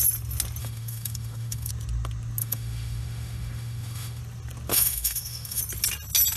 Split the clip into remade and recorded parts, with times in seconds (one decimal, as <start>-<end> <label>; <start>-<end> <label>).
0.0-0.6 recorded; 0.6-1.7 remade; 1.7-2.4 recorded; 2.4-4.2 remade; 4.2-4.7 recorded; 4.7-5.6 remade; 5.6-6.4 recorded